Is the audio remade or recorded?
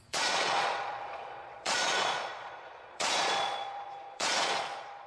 remade